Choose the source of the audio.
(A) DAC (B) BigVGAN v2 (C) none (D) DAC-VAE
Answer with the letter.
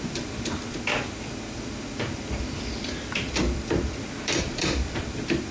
B